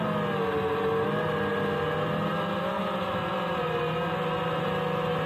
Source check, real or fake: real